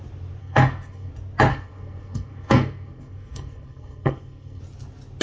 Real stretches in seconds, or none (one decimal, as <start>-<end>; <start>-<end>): 0.0-0.4; 1.1-1.5; 4.6-5.2